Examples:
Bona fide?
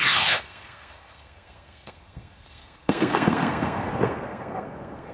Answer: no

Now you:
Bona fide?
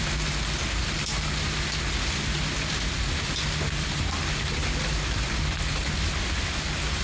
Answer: yes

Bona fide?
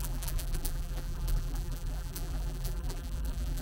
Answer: no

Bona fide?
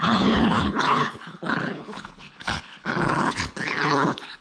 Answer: no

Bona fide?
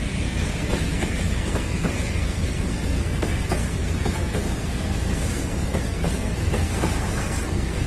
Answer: no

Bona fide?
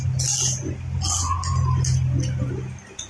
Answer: yes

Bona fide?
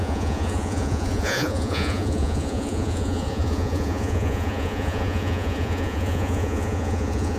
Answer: no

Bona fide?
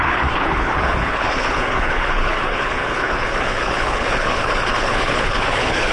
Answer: no